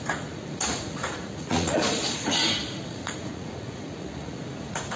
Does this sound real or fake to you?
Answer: fake